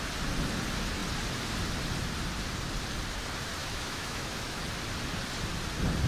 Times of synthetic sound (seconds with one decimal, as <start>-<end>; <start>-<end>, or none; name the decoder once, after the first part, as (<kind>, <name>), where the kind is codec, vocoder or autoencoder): 3.6-4.6 (autoencoder, DAC-VAE)